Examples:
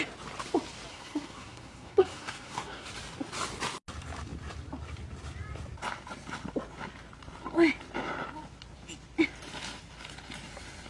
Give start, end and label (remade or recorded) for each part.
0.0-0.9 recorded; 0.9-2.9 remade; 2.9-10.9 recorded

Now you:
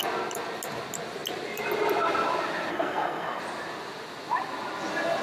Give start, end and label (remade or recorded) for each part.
0.0-2.7 recorded; 2.7-3.4 remade; 3.4-5.2 recorded

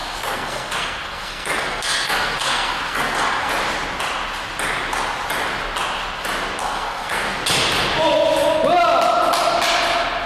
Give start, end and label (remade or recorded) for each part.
0.0-3.5 remade; 3.5-6.6 recorded; 6.6-7.4 remade; 7.4-10.3 recorded

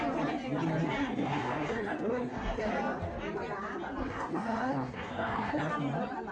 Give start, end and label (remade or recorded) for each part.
0.0-1.0 recorded; 1.0-2.7 remade; 2.7-4.0 recorded; 4.0-5.7 remade; 5.7-6.3 recorded

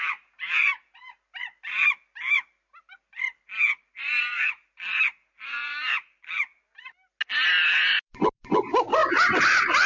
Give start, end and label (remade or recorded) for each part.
0.0-9.9 recorded

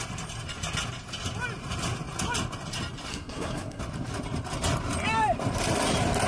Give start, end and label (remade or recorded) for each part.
0.0-3.1 recorded; 3.1-3.8 remade; 3.8-6.3 recorded